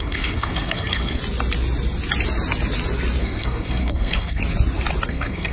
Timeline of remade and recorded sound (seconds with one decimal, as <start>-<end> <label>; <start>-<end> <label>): 0.0-1.2 remade; 1.2-3.2 recorded; 3.2-4.4 remade; 4.4-5.1 recorded; 5.1-5.5 remade